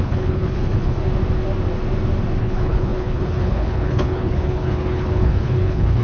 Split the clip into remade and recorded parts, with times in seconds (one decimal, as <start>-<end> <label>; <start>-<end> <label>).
0.0-1.0 remade; 1.0-2.4 recorded; 2.4-6.0 remade